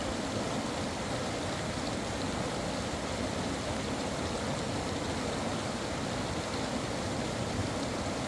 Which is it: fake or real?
real